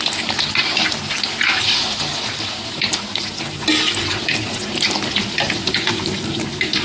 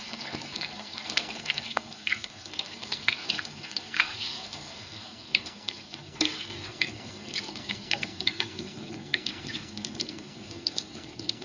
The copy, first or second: second